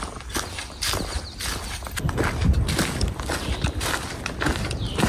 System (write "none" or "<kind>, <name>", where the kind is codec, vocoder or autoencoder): none